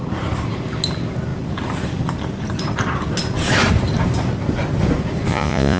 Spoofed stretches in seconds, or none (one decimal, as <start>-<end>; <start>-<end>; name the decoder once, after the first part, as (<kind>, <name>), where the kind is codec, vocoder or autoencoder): 5.3-5.8 (vocoder, Vocos)